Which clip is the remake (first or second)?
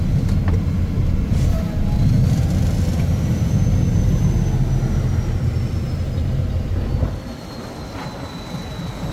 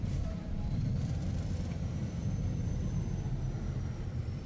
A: second